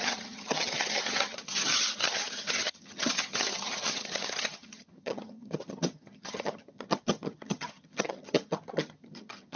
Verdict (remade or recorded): remade